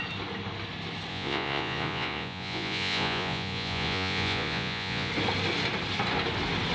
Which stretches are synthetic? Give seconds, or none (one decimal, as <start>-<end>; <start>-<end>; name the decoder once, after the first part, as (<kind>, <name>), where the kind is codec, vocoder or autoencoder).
1.1-5.1 (vocoder, Vocos)